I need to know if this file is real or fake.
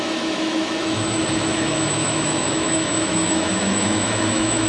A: fake